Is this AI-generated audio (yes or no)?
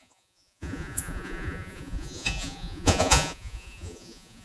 yes